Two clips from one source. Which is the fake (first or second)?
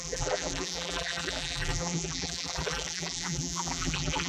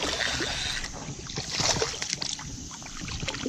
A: first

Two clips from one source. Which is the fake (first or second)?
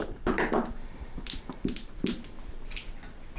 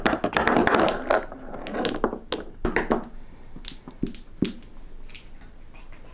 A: first